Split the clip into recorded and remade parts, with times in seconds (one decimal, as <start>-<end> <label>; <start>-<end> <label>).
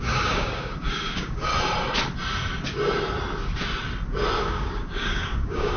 0.0-1.5 remade; 1.5-4.4 recorded; 4.4-5.8 remade